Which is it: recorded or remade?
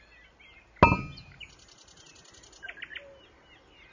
recorded